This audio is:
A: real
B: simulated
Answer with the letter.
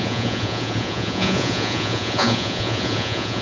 B